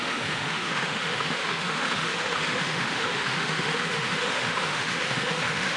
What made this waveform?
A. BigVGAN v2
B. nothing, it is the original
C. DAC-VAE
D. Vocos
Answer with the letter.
C